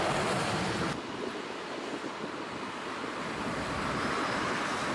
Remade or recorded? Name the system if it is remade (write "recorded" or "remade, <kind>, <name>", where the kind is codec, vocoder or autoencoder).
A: recorded